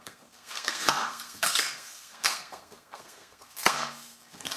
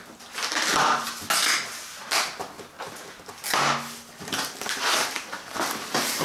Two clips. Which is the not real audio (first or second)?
first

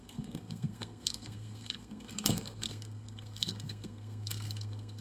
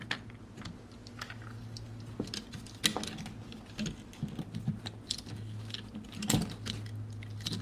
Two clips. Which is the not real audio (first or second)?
first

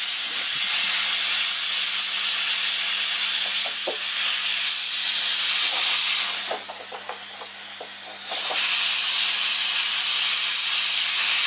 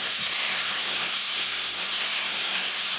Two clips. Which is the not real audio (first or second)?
second